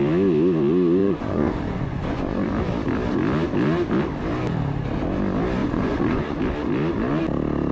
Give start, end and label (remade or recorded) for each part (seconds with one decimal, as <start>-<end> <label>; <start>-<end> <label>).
0.0-1.0 recorded; 1.0-2.5 remade; 2.5-5.6 recorded; 5.6-6.4 remade; 6.4-7.7 recorded